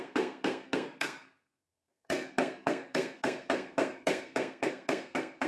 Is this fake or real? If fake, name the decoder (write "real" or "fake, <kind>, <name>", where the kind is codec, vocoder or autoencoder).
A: fake, codec, SNAC